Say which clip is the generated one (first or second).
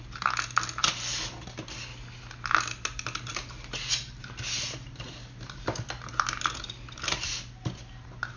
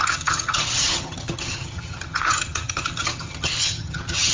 second